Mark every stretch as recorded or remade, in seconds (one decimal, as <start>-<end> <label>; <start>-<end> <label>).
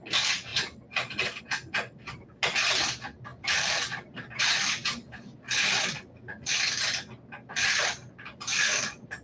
0.0-9.2 recorded